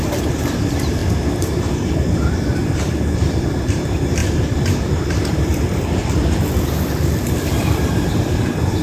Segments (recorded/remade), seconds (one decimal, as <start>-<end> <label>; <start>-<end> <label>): 0.0-5.5 remade; 5.5-7.5 recorded; 7.5-8.8 remade